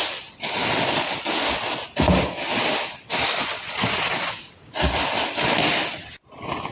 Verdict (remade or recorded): recorded